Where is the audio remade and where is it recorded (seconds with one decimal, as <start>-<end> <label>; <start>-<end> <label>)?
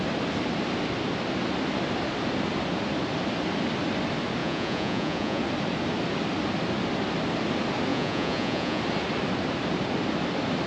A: 0.0-4.4 recorded; 4.4-5.4 remade; 5.4-7.9 recorded; 7.9-8.8 remade; 8.8-10.7 recorded